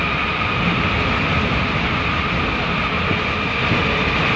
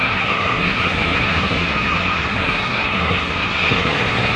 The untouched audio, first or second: first